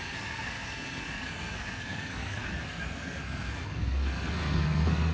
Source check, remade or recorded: remade